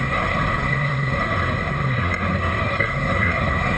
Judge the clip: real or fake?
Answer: fake